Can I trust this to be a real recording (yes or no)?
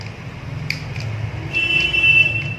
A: yes